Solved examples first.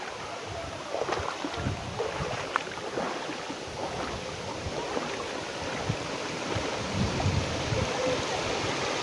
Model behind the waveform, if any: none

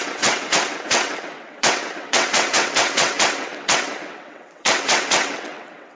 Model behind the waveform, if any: vocoder, WaveNeXt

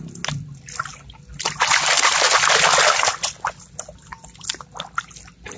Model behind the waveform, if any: none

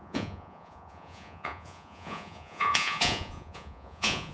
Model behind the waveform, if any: vocoder, Vocos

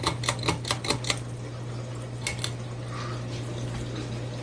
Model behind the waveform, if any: none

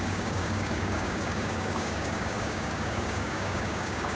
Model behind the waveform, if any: codec, DAC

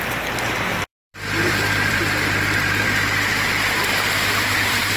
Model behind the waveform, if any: vocoder, BigVGAN v2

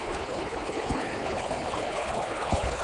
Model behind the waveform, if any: codec, HILCodec